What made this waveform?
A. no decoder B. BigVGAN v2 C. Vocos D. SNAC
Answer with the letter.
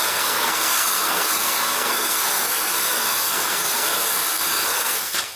D